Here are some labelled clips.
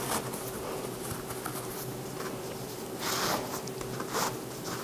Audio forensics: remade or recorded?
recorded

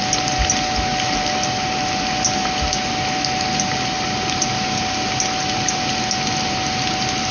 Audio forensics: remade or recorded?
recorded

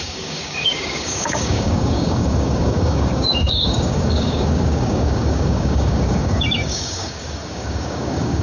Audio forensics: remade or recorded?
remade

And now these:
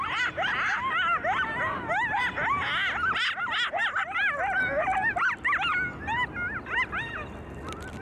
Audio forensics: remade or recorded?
recorded